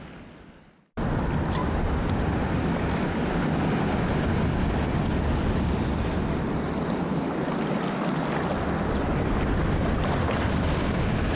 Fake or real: real